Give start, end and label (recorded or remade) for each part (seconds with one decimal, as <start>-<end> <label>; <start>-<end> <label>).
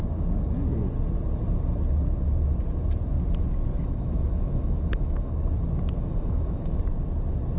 0.0-3.7 recorded; 3.7-5.3 remade; 5.3-6.0 recorded; 6.0-6.8 remade; 6.8-7.6 recorded